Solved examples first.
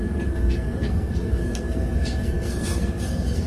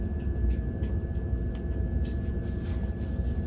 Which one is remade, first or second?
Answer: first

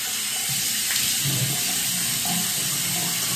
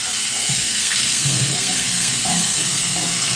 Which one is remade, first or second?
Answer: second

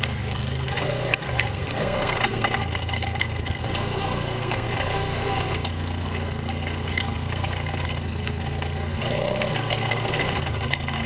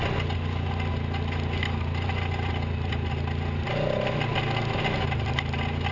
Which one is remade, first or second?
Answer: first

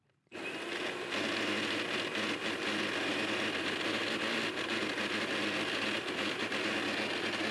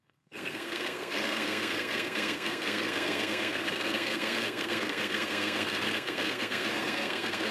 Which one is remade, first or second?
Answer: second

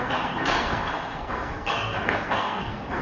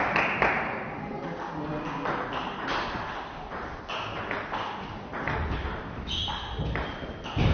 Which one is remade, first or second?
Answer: first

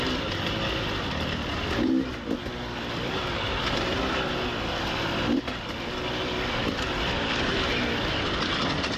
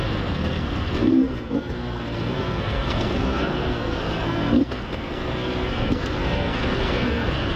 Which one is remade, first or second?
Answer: second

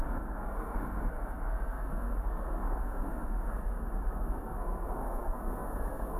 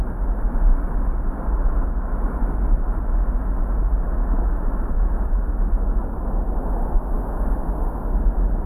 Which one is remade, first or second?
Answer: first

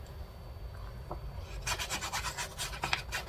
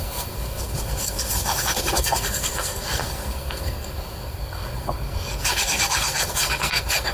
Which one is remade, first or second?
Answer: second